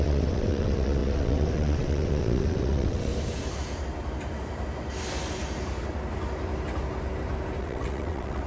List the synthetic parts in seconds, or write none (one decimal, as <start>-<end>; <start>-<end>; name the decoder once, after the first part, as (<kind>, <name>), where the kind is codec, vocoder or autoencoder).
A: 0.0-3.1 (vocoder, WaveNeXt); 7.6-8.5